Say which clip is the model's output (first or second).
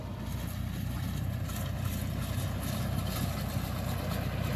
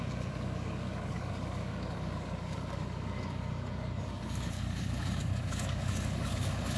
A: second